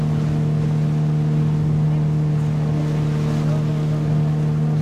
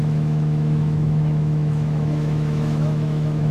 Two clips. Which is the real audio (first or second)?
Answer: first